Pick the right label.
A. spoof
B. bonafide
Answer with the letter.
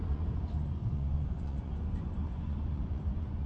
A